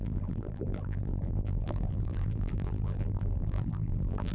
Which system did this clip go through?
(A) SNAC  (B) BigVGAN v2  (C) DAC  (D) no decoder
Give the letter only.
B